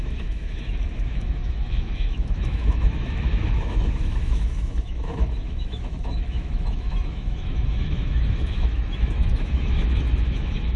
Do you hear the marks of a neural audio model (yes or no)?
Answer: yes